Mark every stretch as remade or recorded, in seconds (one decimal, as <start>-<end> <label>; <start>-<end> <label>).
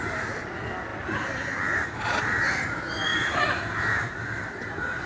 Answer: 0.0-0.9 recorded; 0.9-2.2 remade; 2.2-3.1 recorded; 3.1-4.5 remade; 4.5-5.1 recorded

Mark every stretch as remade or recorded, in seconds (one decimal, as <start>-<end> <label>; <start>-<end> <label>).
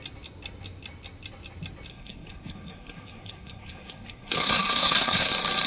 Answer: 0.0-1.9 recorded; 1.9-5.3 remade; 5.3-5.7 recorded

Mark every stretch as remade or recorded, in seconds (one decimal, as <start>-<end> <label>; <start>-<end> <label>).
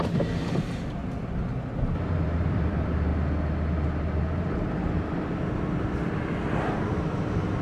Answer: 0.0-1.0 remade; 1.0-2.1 recorded; 2.1-3.1 remade; 3.1-6.9 recorded; 6.9-7.6 remade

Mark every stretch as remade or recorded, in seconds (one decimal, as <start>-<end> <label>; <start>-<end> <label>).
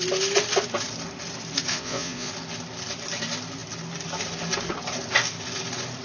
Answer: 0.0-1.7 recorded; 1.7-2.3 remade; 2.3-6.0 recorded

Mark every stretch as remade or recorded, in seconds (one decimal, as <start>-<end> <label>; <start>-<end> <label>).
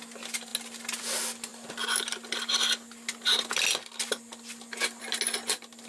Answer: 0.0-5.9 recorded